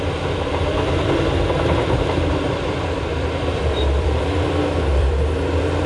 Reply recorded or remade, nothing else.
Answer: remade